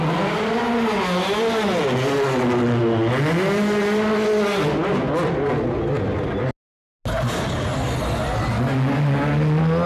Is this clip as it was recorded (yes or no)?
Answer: yes